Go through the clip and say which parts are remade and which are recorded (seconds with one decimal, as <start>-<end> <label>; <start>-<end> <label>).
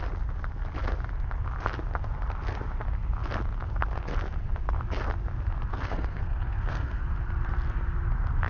0.0-5.7 recorded; 5.7-7.0 remade; 7.0-8.5 recorded